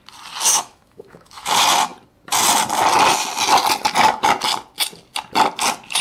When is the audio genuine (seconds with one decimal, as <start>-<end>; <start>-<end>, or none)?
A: 0.0-0.5; 1.5-6.0